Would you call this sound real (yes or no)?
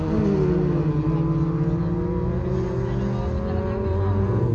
yes